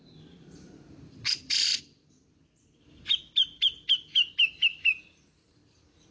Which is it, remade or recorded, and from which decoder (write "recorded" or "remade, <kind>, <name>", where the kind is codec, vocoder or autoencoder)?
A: remade, vocoder, BigVGAN v2